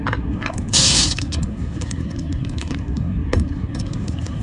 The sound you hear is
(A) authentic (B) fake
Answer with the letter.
B